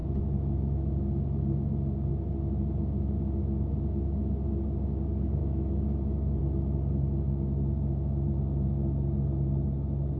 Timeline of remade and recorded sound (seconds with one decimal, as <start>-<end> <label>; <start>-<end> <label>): 0.0-0.9 remade; 0.9-5.4 recorded; 5.4-6.4 remade; 6.4-10.2 recorded

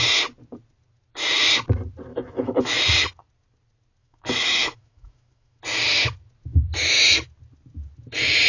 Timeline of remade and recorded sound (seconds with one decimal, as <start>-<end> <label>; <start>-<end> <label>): 0.0-2.1 recorded; 2.1-2.8 remade; 2.8-4.0 recorded; 4.0-5.6 remade; 5.6-8.5 recorded

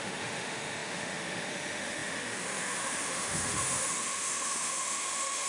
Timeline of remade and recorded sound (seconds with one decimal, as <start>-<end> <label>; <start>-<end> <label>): 0.0-5.5 remade

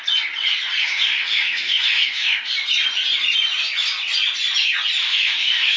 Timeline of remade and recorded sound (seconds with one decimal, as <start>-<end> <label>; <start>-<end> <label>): 0.0-0.8 recorded; 0.8-2.5 remade; 2.5-5.0 recorded; 5.0-5.8 remade

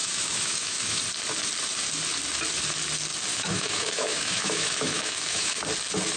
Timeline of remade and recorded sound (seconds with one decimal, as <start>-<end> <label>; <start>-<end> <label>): 0.0-1.0 remade; 1.0-3.3 recorded; 3.3-5.6 remade; 5.6-6.2 recorded

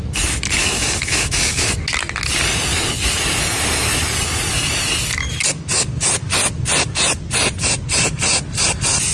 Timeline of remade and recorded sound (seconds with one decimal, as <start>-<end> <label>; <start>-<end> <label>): 0.0-0.6 recorded; 0.6-1.7 remade; 1.7-9.1 recorded

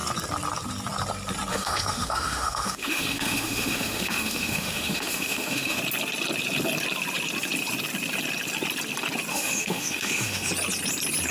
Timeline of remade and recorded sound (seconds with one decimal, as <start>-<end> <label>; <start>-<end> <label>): 0.0-1.5 recorded; 1.5-5.8 remade; 5.8-9.3 recorded; 9.3-10.5 remade; 10.5-11.3 recorded